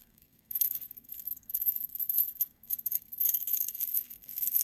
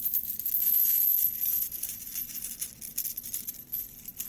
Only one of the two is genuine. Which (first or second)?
second